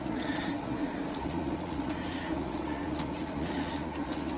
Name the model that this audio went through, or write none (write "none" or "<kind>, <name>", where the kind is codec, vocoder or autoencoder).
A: vocoder, Vocos